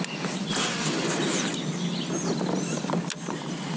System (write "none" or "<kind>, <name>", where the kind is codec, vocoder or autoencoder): none